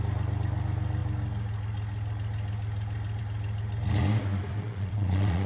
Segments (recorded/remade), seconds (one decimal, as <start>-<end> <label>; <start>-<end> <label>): 0.0-4.6 recorded; 4.6-5.5 remade